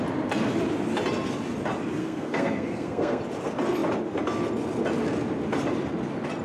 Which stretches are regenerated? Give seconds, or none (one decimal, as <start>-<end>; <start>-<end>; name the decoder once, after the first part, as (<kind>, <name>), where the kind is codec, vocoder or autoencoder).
2.0-3.2 (codec, SNAC)